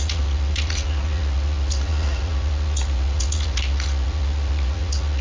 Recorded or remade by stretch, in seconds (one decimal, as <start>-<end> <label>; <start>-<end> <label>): 0.0-5.2 remade